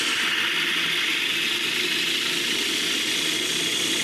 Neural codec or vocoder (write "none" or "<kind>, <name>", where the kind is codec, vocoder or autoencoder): none